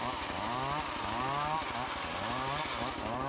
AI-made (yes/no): no